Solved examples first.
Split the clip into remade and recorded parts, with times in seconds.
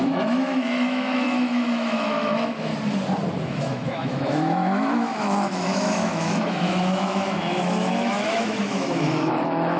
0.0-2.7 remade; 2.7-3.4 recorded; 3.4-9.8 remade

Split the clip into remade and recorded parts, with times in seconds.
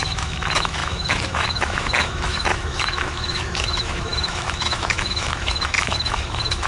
0.0-6.7 remade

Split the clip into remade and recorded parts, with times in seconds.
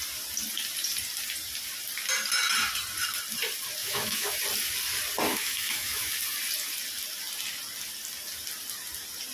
0.0-3.8 recorded; 3.8-4.4 remade; 4.4-5.3 recorded; 5.3-6.1 remade; 6.1-9.3 recorded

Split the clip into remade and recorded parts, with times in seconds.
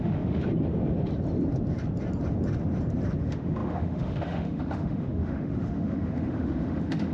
0.0-0.4 remade; 0.4-3.2 recorded; 3.2-7.1 remade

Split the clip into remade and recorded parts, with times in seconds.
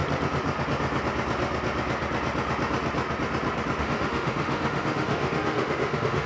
0.0-3.8 recorded; 3.8-6.3 remade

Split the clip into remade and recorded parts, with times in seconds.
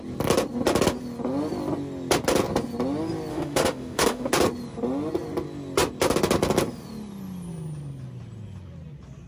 0.0-3.3 recorded; 3.3-4.3 remade; 4.3-9.3 recorded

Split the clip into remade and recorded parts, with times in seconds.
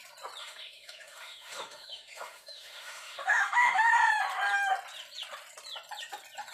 0.0-0.4 recorded; 0.4-3.9 remade; 3.9-6.5 recorded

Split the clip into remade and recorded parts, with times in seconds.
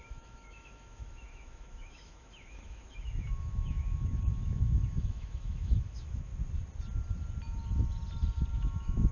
0.0-6.3 remade; 6.3-8.5 recorded; 8.5-9.1 remade